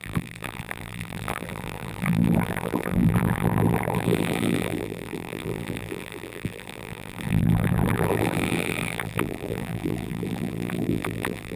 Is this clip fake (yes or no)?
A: yes